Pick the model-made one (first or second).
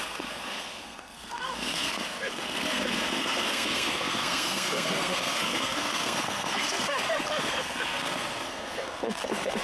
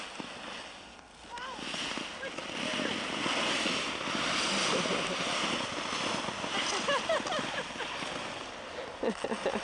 first